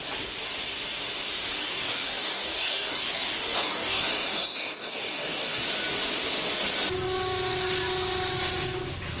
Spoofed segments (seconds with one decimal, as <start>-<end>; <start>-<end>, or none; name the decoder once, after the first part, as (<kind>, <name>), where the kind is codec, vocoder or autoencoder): 1.6-5.6 (codec, DAC)